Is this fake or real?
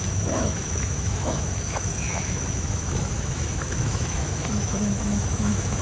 fake